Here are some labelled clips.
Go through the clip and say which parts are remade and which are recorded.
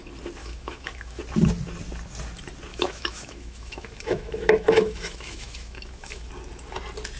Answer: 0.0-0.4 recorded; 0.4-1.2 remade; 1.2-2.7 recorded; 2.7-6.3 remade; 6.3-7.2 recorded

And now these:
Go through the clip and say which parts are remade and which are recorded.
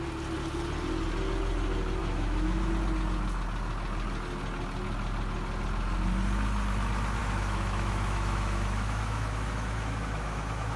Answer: 0.0-2.0 recorded; 2.0-2.7 remade; 2.7-7.2 recorded; 7.2-10.8 remade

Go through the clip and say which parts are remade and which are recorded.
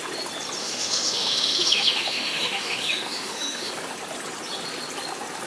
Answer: 0.0-0.6 recorded; 0.6-3.7 remade; 3.7-5.5 recorded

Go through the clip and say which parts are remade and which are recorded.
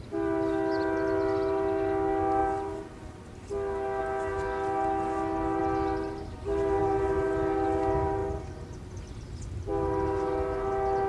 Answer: 0.0-11.1 recorded